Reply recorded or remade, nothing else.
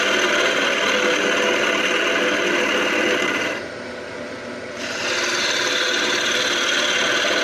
recorded